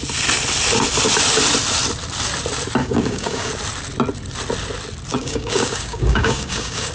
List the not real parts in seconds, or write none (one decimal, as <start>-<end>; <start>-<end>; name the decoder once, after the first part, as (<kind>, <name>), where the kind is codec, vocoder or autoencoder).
2.8-3.5 (codec, DAC); 5.1-6.9